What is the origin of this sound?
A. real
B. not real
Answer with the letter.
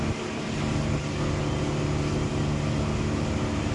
A